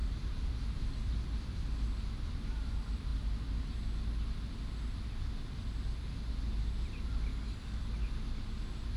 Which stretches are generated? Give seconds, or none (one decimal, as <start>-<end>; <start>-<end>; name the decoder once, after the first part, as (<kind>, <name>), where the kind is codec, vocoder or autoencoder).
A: 7.3-7.8 (codec, DAC)